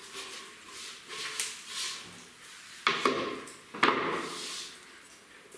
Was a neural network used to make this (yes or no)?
no